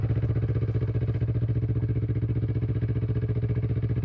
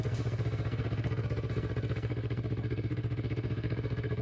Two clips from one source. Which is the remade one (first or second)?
second